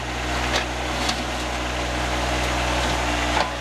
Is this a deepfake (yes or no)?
no